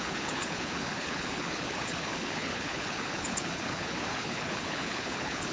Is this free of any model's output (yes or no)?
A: no